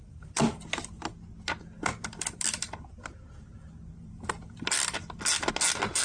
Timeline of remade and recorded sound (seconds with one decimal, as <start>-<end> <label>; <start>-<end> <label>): 0.0-6.0 recorded